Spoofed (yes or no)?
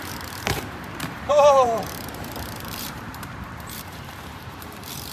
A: yes